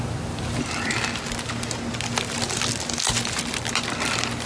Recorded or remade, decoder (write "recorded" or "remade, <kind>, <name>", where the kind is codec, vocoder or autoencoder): recorded